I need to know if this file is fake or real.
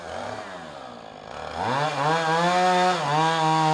real